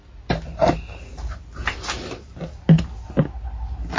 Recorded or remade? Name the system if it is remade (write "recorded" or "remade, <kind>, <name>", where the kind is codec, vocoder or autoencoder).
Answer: recorded